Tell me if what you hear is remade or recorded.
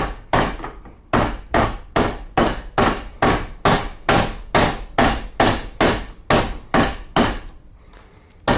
recorded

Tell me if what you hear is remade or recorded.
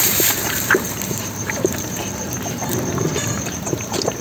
remade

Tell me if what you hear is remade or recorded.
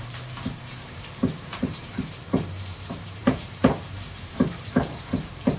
remade